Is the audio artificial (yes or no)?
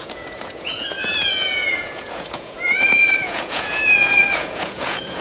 yes